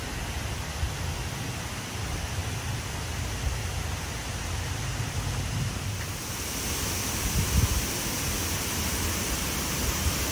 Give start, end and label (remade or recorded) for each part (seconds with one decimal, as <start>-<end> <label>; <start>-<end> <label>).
0.0-10.3 recorded